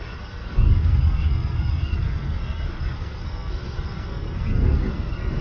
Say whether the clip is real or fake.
fake